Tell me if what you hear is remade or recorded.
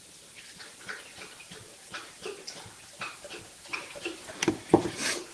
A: remade